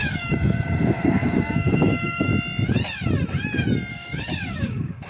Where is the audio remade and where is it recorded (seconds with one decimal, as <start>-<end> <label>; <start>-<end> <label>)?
0.0-2.3 remade; 2.3-3.9 recorded; 3.9-5.1 remade